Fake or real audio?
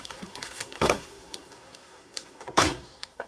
fake